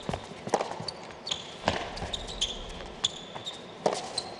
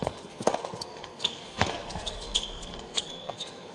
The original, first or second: first